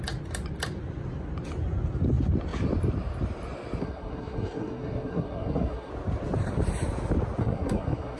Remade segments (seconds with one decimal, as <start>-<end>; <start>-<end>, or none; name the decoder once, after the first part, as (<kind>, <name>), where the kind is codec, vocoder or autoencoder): 3.8-5.9 (codec, SNAC); 7.4-8.2